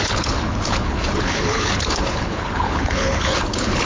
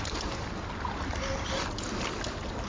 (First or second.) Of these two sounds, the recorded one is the second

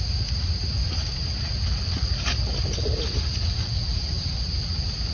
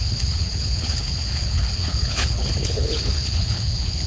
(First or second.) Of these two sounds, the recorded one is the first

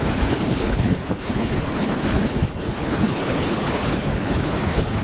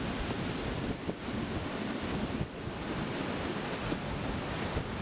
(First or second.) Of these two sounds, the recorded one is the second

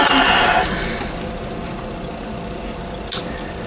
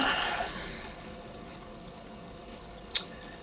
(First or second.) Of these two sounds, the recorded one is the first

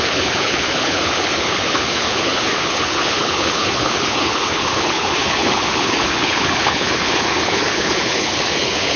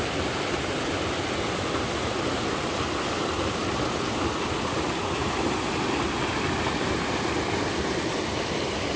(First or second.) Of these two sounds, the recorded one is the second